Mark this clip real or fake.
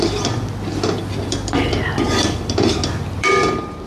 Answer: fake